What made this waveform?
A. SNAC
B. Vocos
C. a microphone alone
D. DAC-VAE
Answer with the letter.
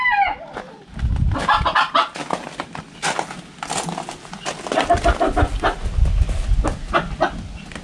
C